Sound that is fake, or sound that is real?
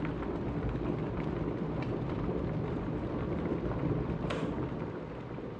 fake